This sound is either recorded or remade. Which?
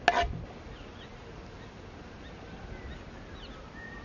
recorded